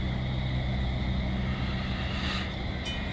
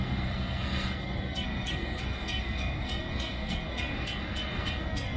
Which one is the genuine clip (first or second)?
first